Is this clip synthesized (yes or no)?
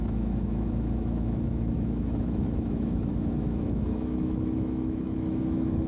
yes